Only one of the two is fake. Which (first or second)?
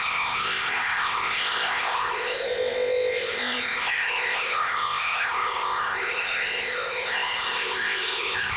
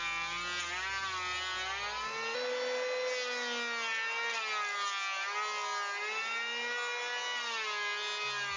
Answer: first